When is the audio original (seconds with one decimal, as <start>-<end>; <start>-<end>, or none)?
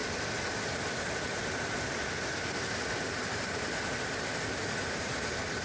0.0-5.6